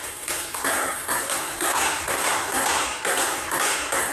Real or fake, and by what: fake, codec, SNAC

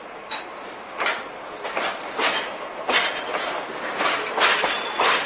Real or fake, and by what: real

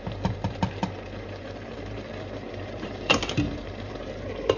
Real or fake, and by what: fake, vocoder, BigVGAN v2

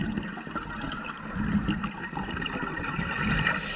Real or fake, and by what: real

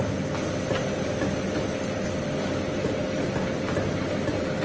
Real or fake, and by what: real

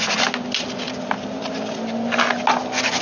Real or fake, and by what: real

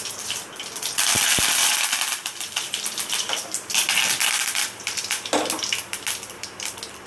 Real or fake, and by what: real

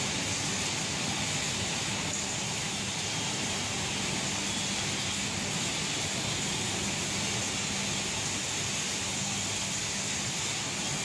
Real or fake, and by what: real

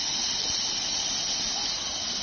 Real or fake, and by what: real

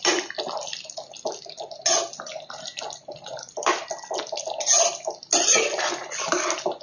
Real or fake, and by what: real